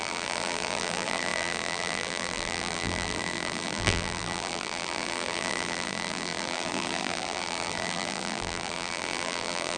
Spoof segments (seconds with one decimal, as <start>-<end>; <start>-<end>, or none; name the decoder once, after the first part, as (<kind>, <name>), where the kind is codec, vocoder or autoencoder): 0.0-9.8 (vocoder, BigVGAN v2)